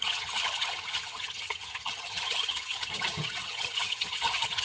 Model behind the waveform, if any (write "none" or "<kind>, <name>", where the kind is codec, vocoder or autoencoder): vocoder, HiFi-GAN